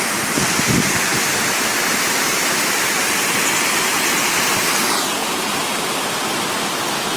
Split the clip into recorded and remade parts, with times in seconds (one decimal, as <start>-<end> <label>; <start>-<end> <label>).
0.0-7.2 recorded